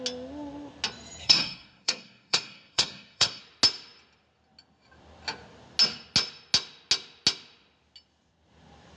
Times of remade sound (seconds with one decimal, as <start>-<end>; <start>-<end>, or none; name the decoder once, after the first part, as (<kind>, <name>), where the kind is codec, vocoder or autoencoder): 1.2-3.4 (codec, SNAC)